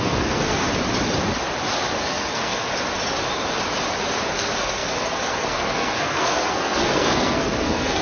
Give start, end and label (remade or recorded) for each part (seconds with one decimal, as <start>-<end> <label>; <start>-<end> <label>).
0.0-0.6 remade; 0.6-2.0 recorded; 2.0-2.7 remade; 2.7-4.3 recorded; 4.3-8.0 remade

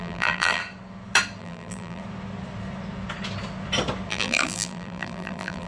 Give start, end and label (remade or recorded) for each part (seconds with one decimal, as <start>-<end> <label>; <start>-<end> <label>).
0.0-0.6 remade; 0.6-1.4 recorded; 1.4-2.0 remade; 2.0-4.1 recorded; 4.1-5.7 remade

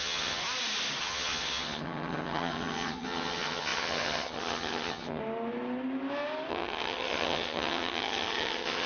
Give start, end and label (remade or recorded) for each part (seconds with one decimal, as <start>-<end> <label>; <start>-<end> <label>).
0.0-0.4 remade; 0.4-1.0 recorded; 1.0-5.2 remade; 5.2-6.5 recorded; 6.5-8.9 remade

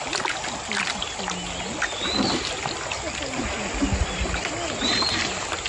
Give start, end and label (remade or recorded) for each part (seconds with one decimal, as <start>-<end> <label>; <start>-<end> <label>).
0.0-5.7 recorded

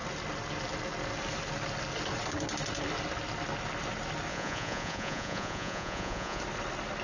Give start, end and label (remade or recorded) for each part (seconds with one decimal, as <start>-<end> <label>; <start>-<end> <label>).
0.0-4.3 recorded; 4.3-6.4 remade; 6.4-7.0 recorded

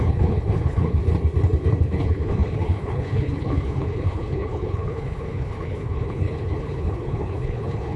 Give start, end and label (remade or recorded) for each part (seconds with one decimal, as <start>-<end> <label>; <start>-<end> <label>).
0.0-1.0 remade; 1.0-1.8 recorded; 1.8-8.0 remade

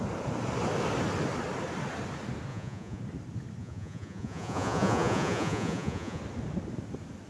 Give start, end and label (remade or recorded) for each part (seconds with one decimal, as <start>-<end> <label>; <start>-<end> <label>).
0.0-2.5 recorded; 2.5-3.0 remade; 3.0-3.6 recorded; 3.6-6.2 remade; 6.2-7.3 recorded